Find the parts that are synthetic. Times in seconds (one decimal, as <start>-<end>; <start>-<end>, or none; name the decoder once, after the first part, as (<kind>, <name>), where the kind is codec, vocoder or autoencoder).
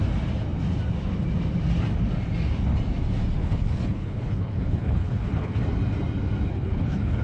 3.4-5.6 (codec, HILCodec); 6.5-7.2